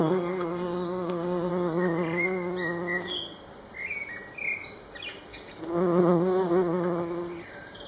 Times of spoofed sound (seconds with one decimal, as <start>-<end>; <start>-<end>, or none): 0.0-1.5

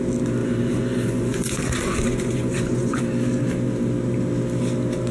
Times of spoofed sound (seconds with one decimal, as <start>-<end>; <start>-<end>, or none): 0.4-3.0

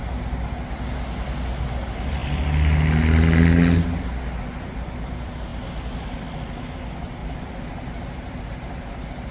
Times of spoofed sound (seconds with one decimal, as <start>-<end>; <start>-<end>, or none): 7.2-8.4

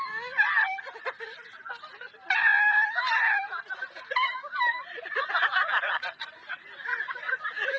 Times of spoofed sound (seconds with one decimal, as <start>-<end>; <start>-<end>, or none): none